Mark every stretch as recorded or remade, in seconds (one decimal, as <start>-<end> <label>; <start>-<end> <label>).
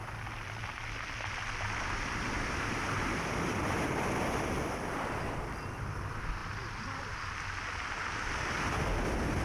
0.0-9.4 recorded